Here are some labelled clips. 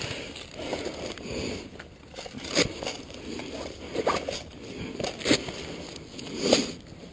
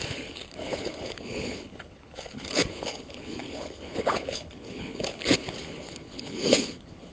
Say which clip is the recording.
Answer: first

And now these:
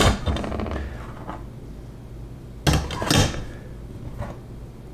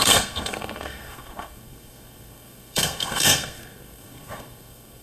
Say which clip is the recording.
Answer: first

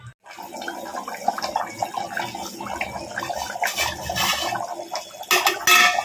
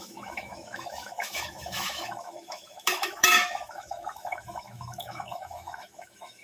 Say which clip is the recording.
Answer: first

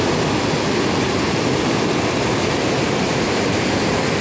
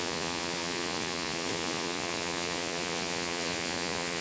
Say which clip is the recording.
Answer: first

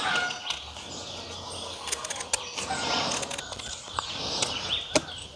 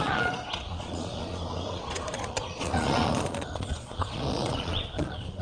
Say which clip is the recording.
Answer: first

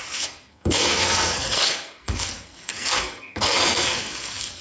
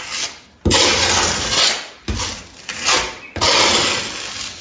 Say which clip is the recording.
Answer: second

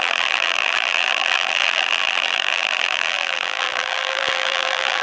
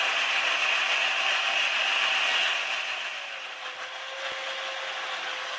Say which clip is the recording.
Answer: second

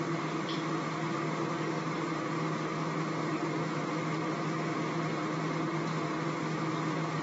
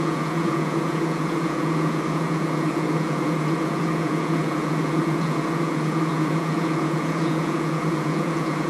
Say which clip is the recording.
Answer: first